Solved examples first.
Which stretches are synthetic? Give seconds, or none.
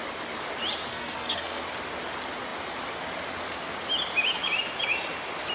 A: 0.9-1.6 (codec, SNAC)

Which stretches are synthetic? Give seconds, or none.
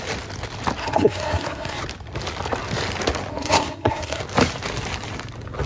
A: 0.8-1.8 (codec, SNAC); 3.3-4.2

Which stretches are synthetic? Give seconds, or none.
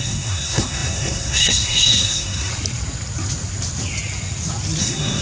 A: 0.0-2.5 (codec, SNAC); 4.8-5.2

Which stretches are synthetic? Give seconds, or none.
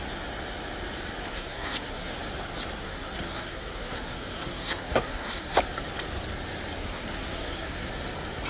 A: 1.3-2.1 (codec, SNAC); 2.8-5.6; 6.8-7.9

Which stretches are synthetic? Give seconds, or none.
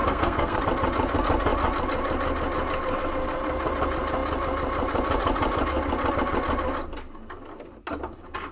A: 0.0-0.6 (codec, SNAC)